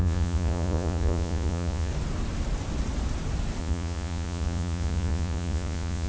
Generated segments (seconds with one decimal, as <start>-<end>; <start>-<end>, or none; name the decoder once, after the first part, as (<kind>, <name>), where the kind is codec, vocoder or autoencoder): 0.0-1.9 (vocoder, Vocos); 3.6-6.1

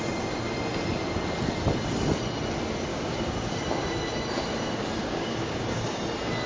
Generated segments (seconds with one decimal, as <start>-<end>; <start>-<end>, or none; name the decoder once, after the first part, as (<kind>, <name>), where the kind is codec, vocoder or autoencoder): 2.9-3.5 (codec, DAC); 5.0-6.0

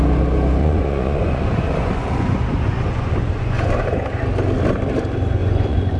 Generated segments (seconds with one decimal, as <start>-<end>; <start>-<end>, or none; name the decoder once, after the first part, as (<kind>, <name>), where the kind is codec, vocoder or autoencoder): 0.6-3.8 (vocoder, Vocos); 5.4-6.0

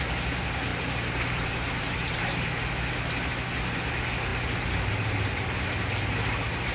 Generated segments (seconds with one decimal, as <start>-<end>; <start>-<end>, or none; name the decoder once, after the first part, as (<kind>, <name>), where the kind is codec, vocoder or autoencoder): 0.7-2.2 (vocoder, BigVGAN v2)